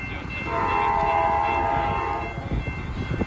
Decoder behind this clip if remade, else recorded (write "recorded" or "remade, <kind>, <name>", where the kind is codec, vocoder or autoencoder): recorded